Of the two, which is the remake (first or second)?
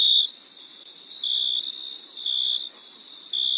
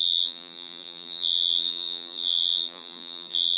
second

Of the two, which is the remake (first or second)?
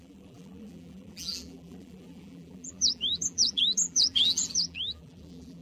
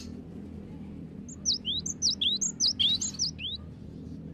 first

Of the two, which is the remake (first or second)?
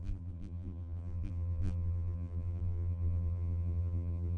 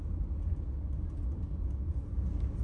first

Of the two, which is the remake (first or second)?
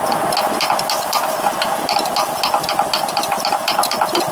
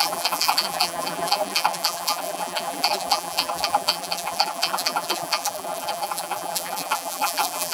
second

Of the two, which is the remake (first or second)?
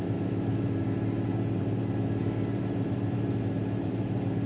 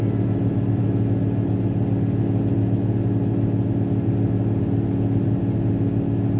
first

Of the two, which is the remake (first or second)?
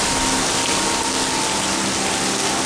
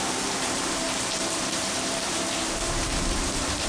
second